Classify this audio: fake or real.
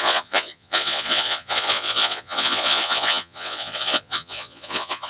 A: fake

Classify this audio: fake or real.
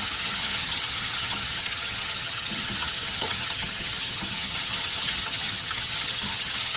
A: fake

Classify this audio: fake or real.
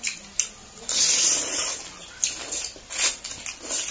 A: real